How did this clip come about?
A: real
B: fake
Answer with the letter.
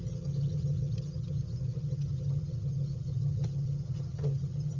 B